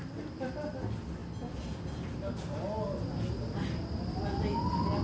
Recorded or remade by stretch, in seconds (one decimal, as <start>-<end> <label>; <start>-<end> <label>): 0.0-5.0 recorded